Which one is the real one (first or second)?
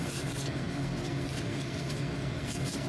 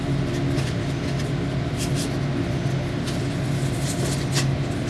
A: second